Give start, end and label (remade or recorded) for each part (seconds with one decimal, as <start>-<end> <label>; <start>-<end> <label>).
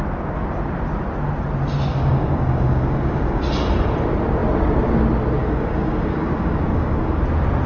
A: 0.0-1.9 recorded; 1.9-3.4 remade; 3.4-5.4 recorded; 5.4-7.2 remade; 7.2-7.7 recorded